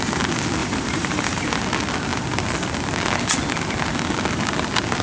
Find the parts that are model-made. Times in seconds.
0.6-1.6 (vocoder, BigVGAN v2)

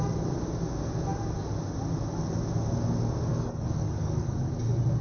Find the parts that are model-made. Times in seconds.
3.3-4.5 (codec, DAC)

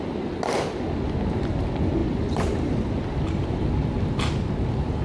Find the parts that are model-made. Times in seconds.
2.0-2.9 (vocoder, BigVGAN v2)

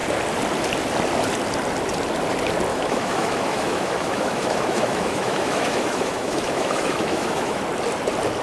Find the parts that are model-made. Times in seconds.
2.7-7.6 (autoencoder, DAC-VAE)

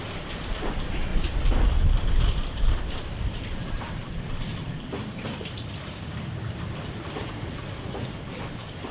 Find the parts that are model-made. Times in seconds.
0.0-1.1 (vocoder, BigVGAN v2); 2.2-8.9

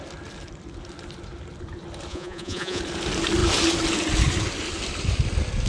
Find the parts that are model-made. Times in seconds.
2.1-2.8 (vocoder, Vocos)

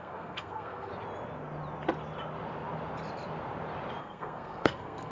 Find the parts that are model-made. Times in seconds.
0.0-0.9 (codec, SNAC); 4.0-5.1